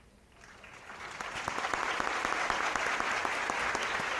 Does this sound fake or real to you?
real